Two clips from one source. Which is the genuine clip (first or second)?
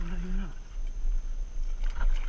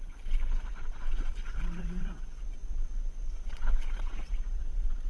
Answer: first